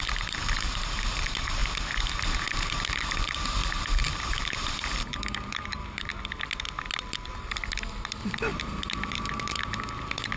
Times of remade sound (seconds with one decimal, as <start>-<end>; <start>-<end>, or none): 0.0-1.6; 2.6-6.1; 8.0-10.4